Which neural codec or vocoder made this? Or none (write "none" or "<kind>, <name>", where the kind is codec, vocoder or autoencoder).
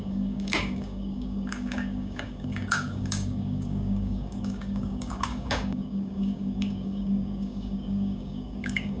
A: codec, DAC